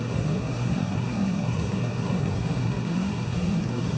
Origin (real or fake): fake